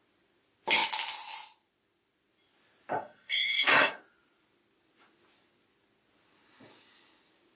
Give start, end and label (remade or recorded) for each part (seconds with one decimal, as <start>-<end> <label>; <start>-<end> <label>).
0.0-2.9 recorded; 2.9-4.0 remade; 4.0-7.5 recorded